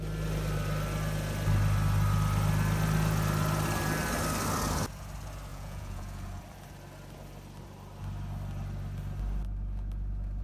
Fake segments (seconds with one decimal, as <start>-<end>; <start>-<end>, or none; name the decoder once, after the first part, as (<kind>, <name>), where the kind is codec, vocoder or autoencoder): 5.5-6.4 (vocoder, Vocos)